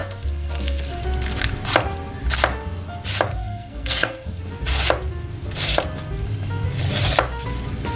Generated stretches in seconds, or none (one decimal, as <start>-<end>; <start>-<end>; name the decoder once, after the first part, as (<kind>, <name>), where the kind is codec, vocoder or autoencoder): 0.0-1.0 (codec, SNAC); 3.3-4.4